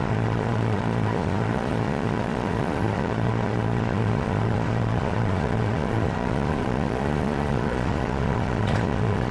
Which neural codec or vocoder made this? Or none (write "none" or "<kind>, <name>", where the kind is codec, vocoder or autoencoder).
vocoder, Vocos